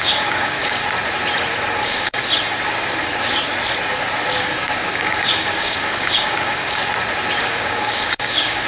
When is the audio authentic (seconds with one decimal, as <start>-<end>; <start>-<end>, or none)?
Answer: 0.8-1.8; 2.2-4.4; 6.8-7.4